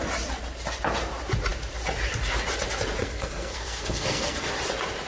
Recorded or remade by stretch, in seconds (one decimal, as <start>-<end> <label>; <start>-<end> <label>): 0.0-3.0 recorded; 3.0-4.5 remade; 4.5-5.1 recorded